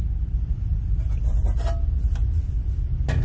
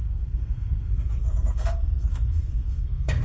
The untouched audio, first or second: first